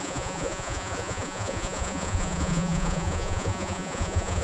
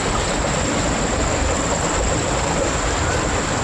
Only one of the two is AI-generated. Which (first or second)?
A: first